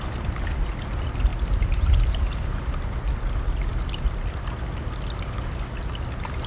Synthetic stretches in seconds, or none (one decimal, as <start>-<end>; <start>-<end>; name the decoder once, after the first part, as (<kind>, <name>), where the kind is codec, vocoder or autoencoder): none